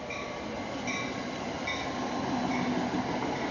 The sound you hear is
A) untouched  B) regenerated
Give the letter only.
A